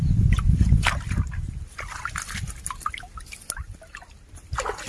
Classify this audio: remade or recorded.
recorded